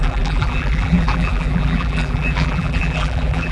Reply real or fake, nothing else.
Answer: fake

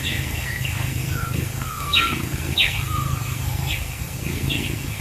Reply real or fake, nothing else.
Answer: fake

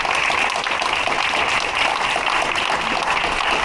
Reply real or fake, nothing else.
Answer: real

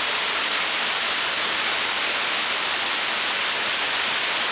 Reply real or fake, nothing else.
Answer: real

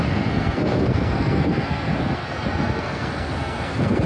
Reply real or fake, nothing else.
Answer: fake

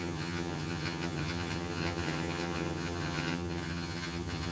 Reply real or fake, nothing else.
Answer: fake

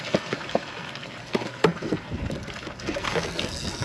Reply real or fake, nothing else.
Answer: fake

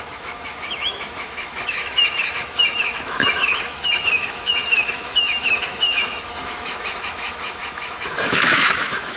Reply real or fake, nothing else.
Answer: fake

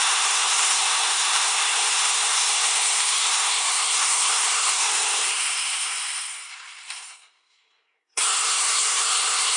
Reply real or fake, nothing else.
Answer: fake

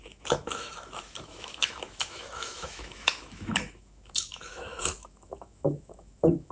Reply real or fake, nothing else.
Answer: fake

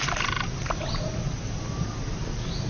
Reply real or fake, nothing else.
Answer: real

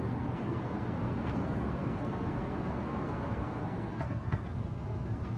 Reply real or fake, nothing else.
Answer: fake